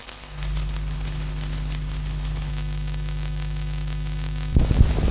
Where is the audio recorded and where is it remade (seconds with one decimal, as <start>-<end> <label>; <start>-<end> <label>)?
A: 0.0-2.5 remade; 2.5-5.1 recorded